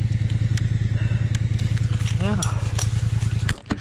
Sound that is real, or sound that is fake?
real